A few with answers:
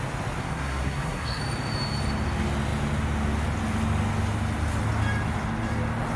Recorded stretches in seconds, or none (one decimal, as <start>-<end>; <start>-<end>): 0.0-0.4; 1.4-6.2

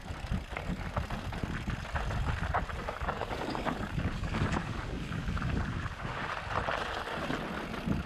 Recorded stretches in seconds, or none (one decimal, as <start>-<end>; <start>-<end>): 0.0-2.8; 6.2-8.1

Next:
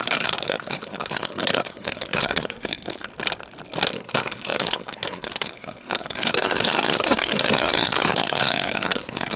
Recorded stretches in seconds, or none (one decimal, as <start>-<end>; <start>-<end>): 3.1-3.9